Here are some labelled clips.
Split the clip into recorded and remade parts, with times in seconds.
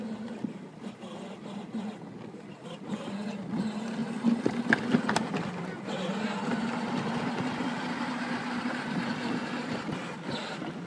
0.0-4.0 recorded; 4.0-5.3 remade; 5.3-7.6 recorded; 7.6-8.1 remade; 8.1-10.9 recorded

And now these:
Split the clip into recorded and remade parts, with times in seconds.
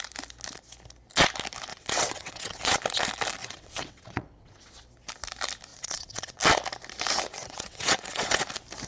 0.0-1.7 recorded; 1.7-2.6 remade; 2.6-3.4 recorded; 3.4-4.8 remade; 4.8-5.7 recorded; 5.7-6.4 remade; 6.4-7.3 recorded; 7.3-8.5 remade; 8.5-8.9 recorded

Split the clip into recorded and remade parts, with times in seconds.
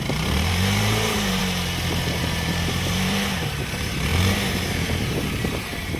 0.0-1.4 remade; 1.4-2.2 recorded; 2.2-6.0 remade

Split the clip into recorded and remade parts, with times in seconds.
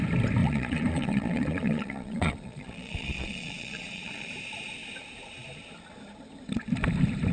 0.0-0.4 recorded; 0.4-4.3 remade; 4.3-7.3 recorded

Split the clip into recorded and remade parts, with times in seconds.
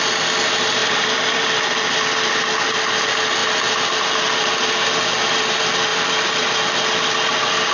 0.0-0.8 recorded; 0.8-1.9 remade; 1.9-5.9 recorded; 5.9-6.5 remade; 6.5-7.7 recorded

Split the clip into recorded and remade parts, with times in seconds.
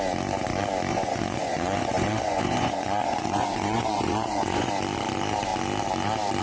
0.0-0.9 recorded; 0.9-4.7 remade; 4.7-6.4 recorded